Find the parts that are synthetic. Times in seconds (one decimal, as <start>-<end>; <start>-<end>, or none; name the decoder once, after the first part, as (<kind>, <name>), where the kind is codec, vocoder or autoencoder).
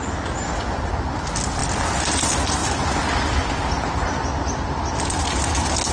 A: none